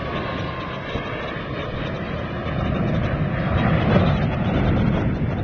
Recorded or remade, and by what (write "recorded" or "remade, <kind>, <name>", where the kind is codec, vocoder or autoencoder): recorded